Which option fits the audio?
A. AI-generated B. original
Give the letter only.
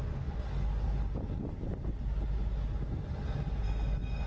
B